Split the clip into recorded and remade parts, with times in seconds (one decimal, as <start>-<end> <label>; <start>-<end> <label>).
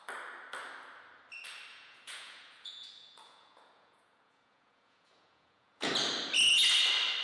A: 0.0-1.7 recorded; 1.7-5.9 remade; 5.9-7.2 recorded